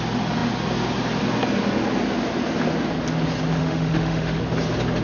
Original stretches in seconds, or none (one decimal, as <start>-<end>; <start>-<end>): 0.0-3.6; 4.4-5.0